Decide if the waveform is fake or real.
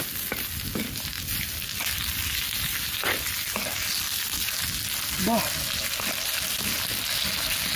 real